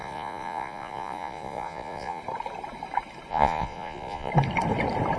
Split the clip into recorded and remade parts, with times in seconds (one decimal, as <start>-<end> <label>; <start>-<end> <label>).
0.0-2.2 remade; 2.2-3.3 recorded; 3.3-4.3 remade; 4.3-5.2 recorded